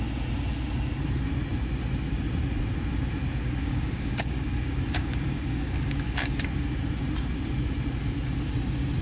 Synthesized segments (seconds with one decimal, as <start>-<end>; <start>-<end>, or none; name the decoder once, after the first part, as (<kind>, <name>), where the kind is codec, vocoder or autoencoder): 3.3-6.4 (codec, DAC)